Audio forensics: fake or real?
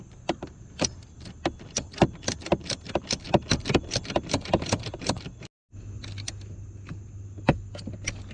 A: real